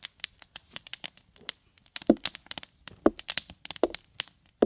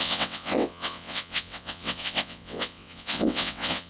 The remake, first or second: second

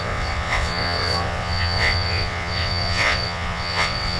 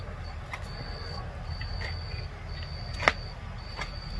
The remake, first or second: first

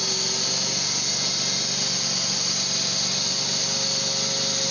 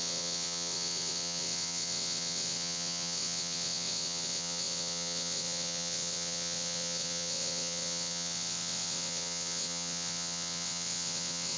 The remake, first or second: second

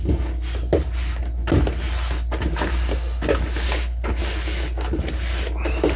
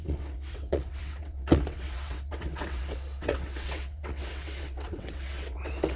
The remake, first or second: second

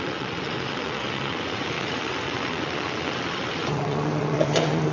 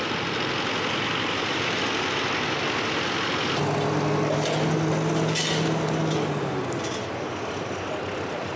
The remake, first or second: first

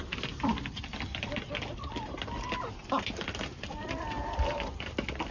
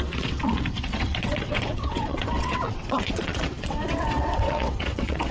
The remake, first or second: second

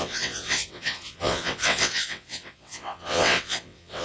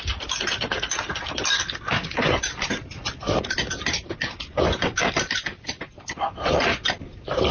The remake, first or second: first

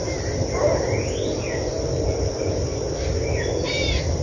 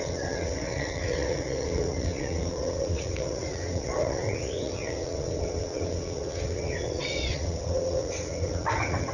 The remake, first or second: second